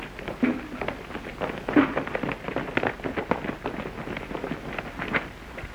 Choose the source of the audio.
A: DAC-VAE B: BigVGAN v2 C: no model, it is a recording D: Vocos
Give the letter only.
C